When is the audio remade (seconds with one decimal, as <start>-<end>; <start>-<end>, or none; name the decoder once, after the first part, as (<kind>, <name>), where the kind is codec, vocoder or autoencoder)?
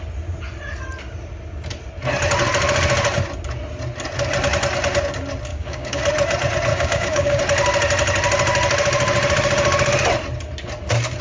5.5-6.0 (codec, DAC); 6.7-7.4